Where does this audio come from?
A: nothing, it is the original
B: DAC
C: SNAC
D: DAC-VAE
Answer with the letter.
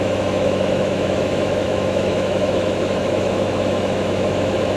D